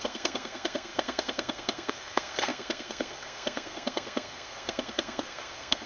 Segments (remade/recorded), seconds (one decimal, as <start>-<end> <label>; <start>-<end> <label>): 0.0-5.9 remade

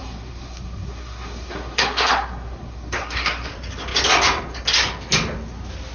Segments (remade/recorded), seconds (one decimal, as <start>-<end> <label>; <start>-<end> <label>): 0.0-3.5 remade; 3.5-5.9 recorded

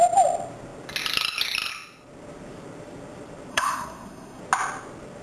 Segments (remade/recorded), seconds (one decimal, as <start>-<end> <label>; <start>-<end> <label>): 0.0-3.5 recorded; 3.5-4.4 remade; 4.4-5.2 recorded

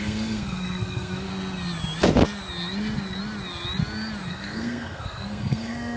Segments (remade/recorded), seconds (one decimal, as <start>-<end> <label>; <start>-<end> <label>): 0.0-1.3 remade; 1.3-4.3 recorded; 4.3-6.0 remade

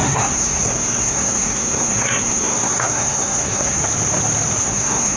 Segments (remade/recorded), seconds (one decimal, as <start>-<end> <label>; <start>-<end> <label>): 0.0-3.8 remade; 3.8-4.6 recorded; 4.6-5.2 remade

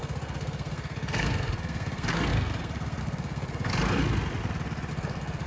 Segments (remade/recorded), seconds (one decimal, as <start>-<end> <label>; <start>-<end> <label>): 0.0-3.7 remade; 3.7-4.9 recorded; 4.9-5.5 remade